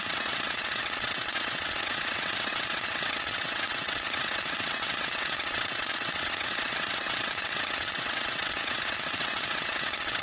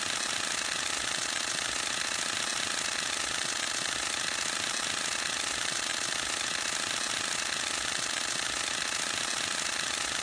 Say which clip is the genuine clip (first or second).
second